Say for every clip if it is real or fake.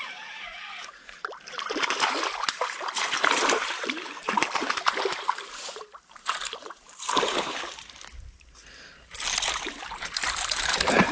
fake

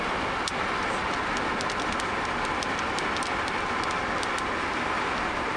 real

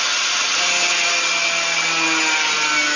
real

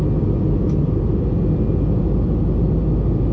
real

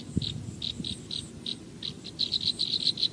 real